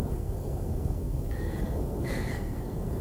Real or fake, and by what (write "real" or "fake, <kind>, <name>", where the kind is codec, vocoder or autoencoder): fake, codec, SNAC